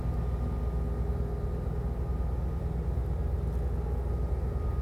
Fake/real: real